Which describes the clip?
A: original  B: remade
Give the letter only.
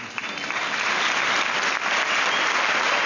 A